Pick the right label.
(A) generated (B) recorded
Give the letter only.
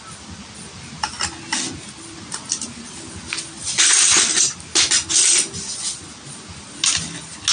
B